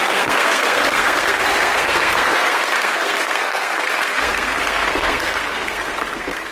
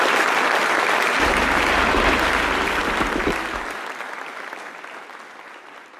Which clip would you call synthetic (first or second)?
first